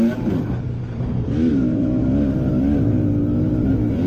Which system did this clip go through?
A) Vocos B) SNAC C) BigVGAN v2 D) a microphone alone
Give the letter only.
D